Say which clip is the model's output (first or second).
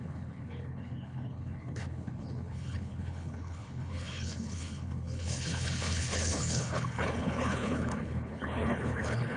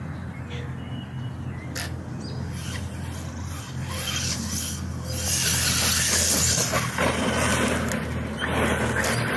first